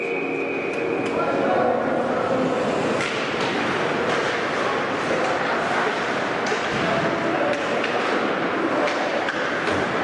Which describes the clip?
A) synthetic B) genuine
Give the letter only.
B